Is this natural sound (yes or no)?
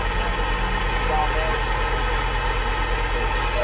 yes